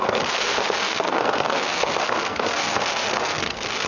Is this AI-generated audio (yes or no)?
yes